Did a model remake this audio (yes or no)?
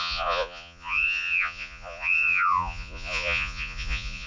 yes